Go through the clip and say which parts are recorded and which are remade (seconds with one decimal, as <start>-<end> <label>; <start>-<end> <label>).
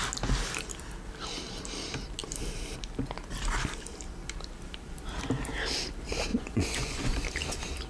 0.0-6.3 recorded; 6.3-7.2 remade; 7.2-7.9 recorded